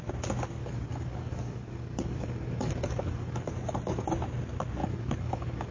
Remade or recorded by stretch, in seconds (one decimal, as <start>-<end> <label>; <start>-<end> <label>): 0.0-0.6 recorded; 0.6-3.5 remade; 3.5-4.8 recorded; 4.8-5.7 remade